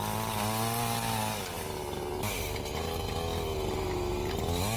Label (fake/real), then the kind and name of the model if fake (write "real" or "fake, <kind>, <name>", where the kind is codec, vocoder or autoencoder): real